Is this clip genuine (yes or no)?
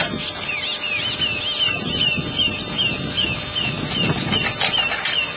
yes